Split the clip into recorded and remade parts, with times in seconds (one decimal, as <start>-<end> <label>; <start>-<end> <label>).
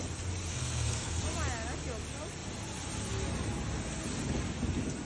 0.0-0.5 recorded; 0.5-1.2 remade; 1.2-5.0 recorded